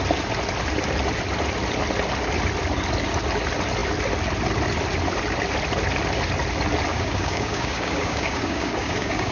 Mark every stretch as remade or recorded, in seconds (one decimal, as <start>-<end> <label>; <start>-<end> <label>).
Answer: 0.0-6.9 recorded; 6.9-9.3 remade

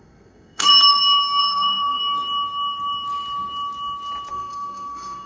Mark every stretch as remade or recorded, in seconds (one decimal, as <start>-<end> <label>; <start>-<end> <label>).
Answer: 0.0-0.7 remade; 0.7-1.4 recorded; 1.4-2.0 remade; 2.0-4.3 recorded; 4.3-5.3 remade